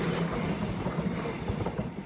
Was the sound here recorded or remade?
recorded